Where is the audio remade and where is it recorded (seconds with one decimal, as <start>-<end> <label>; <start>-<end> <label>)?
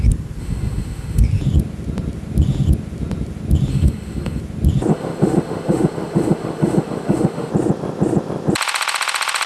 0.0-0.4 recorded; 0.4-1.2 remade; 1.2-3.7 recorded; 3.7-4.4 remade; 4.4-4.9 recorded; 4.9-7.5 remade; 7.5-9.5 recorded